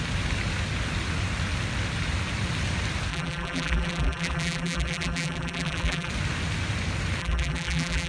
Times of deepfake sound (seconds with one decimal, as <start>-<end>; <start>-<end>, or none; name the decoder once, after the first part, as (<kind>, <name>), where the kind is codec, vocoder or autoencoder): 3.1-6.1 (vocoder, BigVGAN v2); 7.2-8.1